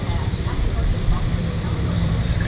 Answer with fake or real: fake